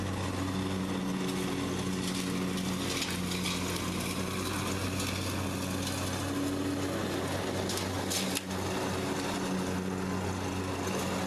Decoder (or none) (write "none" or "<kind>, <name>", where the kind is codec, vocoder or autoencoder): none